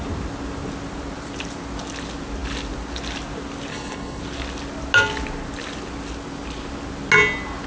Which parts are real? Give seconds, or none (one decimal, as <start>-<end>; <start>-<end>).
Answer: 0.0-3.7; 4.2-7.7